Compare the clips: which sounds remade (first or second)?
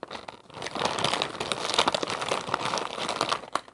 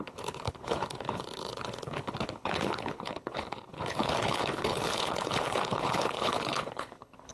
second